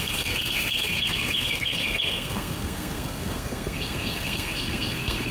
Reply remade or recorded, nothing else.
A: remade